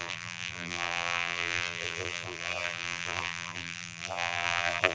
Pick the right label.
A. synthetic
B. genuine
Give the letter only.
A